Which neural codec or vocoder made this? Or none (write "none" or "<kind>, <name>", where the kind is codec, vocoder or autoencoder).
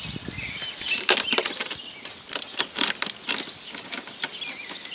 none